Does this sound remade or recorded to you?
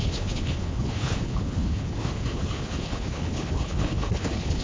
remade